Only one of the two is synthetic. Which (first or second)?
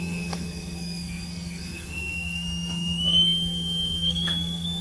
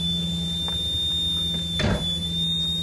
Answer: first